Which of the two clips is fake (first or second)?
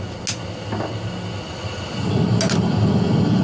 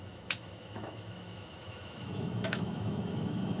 second